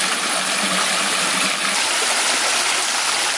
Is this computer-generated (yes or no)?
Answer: no